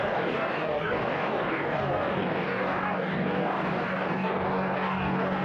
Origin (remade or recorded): remade